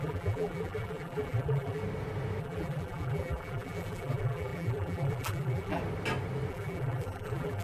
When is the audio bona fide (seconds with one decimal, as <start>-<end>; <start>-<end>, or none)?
1.8-2.4; 5.8-6.5